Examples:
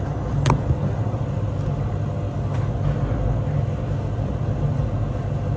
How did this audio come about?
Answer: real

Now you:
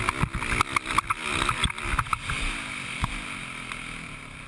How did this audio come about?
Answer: real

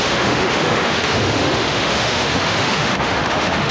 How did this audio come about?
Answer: fake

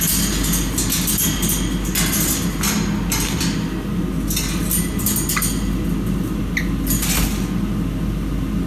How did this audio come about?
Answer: real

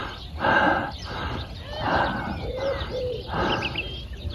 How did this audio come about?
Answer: real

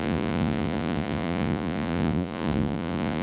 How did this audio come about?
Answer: fake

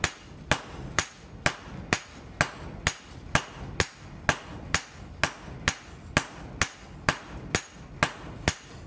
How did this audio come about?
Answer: real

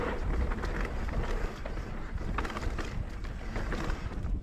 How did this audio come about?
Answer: real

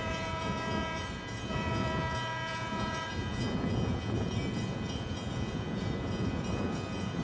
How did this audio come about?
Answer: fake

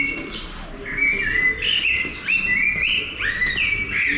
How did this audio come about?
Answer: real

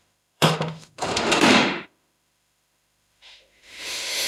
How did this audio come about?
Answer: fake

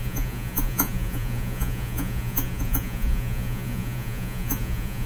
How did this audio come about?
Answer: fake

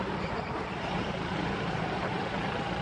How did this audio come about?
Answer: fake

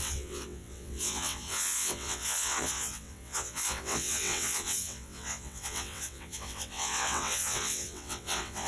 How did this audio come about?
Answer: fake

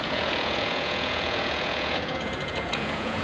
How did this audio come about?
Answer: fake